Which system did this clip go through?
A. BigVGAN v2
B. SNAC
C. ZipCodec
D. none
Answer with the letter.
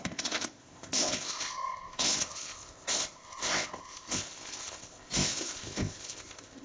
C